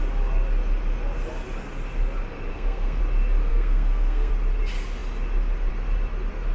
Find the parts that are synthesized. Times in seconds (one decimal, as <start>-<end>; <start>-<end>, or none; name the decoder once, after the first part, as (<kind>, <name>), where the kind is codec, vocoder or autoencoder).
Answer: 2.5-3.0 (codec, SNAC); 3.5-4.3

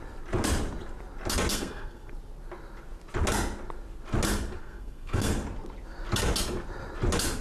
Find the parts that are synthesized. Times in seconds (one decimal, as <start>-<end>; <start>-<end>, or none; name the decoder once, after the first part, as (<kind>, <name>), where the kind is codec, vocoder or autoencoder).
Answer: 1.5-2.1 (codec, SNAC); 4.6-5.3

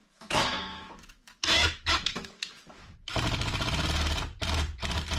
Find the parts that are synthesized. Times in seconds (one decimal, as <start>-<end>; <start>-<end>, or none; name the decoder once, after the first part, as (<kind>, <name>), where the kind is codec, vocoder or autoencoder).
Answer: 0.0-3.1 (autoencoder, DAC-VAE)

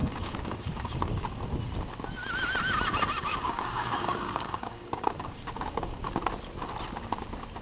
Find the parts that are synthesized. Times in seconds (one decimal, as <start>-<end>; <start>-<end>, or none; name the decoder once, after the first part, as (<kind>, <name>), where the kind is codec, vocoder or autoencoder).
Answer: 0.0-1.1 (codec, DAC); 3.3-6.1